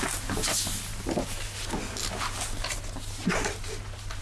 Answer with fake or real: real